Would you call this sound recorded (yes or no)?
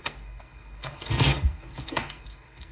no